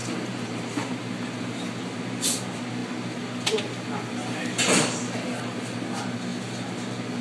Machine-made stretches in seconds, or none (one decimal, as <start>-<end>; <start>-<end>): 0.0-1.7